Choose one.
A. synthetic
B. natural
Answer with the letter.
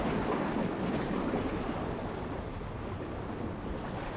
B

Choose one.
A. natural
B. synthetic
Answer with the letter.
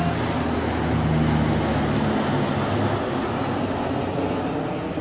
A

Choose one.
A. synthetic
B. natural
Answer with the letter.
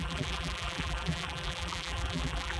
A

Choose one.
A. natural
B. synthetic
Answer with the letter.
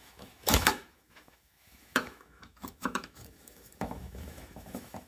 B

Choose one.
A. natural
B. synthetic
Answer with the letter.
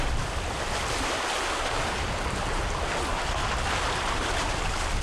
A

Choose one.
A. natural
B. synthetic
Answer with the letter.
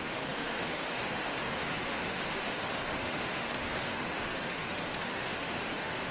B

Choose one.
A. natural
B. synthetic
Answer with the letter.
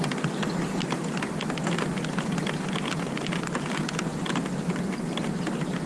A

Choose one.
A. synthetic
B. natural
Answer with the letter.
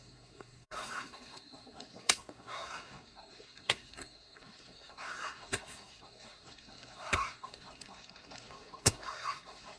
A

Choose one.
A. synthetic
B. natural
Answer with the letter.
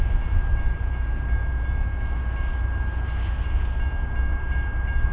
B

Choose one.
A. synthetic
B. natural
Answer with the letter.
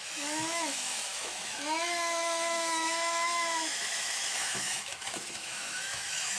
A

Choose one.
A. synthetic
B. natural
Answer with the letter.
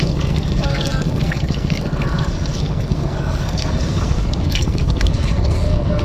A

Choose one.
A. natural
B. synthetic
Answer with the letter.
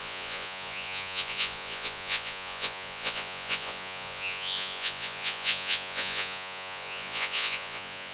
B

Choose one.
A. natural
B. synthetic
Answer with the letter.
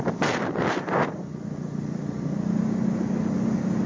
A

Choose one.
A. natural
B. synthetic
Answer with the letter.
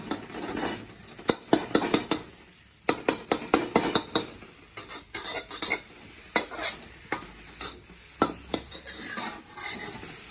A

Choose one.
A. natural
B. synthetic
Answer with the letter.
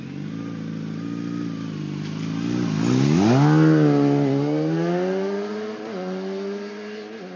A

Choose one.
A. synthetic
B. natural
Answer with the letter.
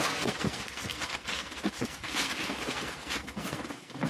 A